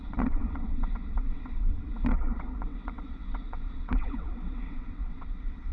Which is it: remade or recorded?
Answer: remade